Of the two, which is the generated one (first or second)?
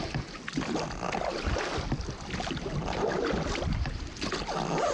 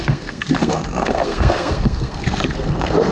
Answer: second